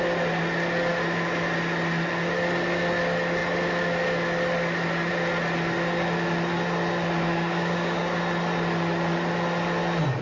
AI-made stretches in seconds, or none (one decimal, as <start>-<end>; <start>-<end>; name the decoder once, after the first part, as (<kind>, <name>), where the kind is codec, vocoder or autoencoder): 7.3-8.2 (codec, DAC)